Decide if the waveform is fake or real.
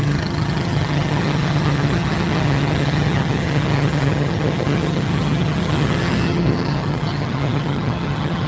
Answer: fake